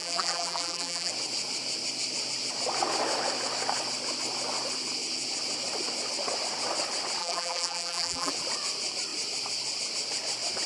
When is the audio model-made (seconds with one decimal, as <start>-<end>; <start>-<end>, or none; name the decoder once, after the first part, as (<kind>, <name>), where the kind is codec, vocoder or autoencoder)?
0.0-1.1 (vocoder, BigVGAN v2); 7.2-8.3